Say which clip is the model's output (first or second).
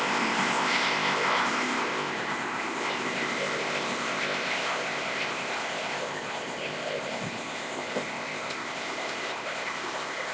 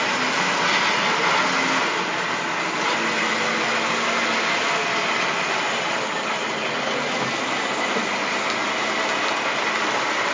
first